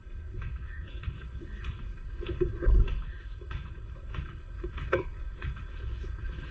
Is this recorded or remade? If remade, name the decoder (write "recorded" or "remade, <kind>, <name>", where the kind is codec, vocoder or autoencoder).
remade, codec, HILCodec